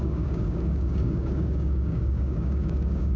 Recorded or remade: remade